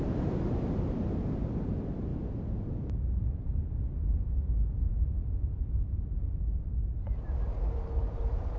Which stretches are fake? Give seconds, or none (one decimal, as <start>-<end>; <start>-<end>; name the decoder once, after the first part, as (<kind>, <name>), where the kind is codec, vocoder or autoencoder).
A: none